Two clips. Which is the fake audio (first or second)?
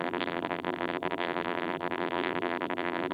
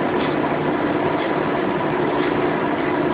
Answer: first